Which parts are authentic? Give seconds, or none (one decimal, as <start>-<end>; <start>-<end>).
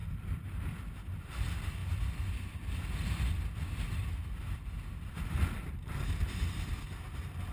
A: 0.0-7.5